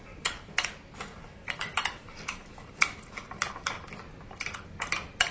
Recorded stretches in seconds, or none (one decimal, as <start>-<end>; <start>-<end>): 0.0-1.1; 3.5-5.3